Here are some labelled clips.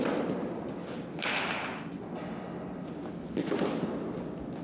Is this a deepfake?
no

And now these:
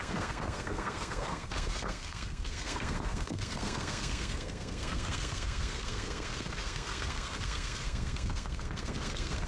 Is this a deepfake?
yes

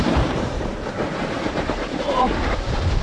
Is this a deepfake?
yes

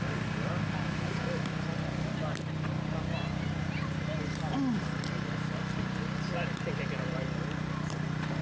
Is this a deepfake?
no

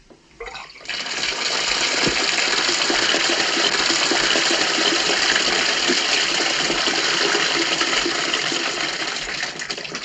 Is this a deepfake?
yes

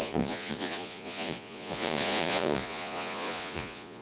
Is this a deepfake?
yes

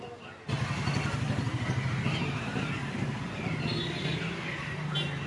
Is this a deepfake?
no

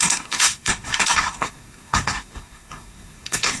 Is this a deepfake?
yes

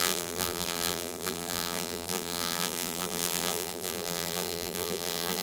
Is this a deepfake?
yes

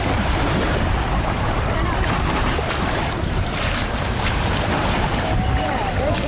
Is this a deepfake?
yes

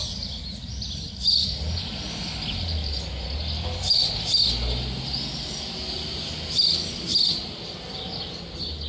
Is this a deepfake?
no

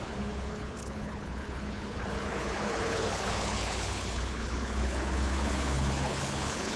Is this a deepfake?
yes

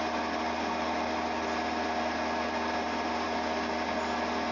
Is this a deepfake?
no